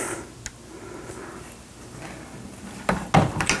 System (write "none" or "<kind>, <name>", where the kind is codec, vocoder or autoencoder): none